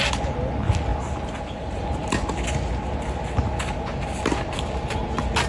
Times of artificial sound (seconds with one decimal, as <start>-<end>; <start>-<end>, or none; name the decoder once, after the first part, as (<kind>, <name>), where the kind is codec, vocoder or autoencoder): none